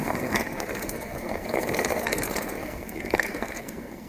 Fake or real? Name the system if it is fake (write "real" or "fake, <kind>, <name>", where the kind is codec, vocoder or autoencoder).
fake, codec, SNAC